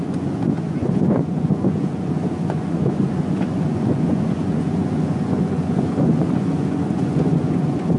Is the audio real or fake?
fake